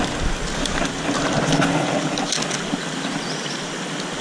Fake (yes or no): no